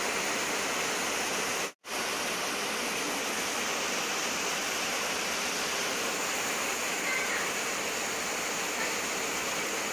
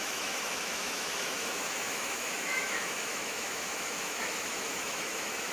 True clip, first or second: first